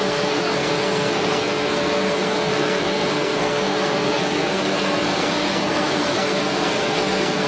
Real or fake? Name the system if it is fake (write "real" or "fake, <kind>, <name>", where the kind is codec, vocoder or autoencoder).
fake, codec, SNAC